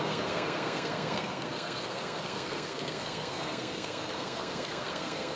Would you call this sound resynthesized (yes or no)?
yes